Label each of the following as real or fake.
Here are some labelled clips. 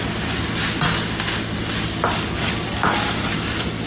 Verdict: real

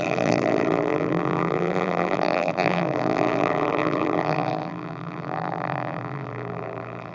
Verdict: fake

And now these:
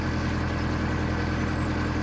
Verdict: real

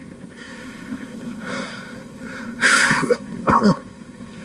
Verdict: fake